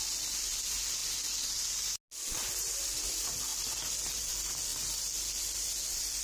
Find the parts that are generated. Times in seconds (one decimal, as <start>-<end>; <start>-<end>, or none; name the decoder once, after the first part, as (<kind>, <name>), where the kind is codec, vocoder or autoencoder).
none